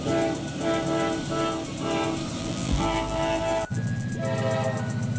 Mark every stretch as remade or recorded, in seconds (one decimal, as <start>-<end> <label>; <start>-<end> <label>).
0.0-2.4 recorded; 2.4-4.1 remade; 4.1-5.2 recorded